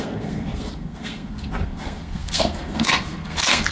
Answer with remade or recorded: remade